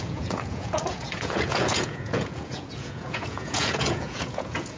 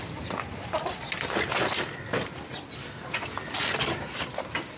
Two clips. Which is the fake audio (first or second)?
first